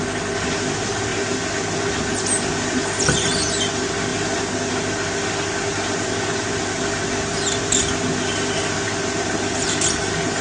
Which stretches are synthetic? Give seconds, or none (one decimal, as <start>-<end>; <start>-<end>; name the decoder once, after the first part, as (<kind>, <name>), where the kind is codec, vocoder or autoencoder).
0.0-1.1 (vocoder, BigVGAN v2); 2.5-10.4